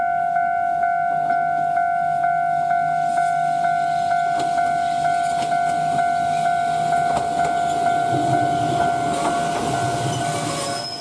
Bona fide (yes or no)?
yes